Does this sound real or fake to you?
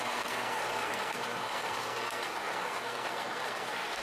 fake